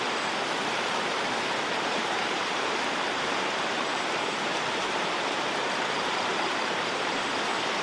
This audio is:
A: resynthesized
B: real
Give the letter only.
A